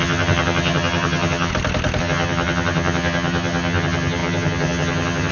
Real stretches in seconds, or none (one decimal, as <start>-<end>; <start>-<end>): 1.5-2.0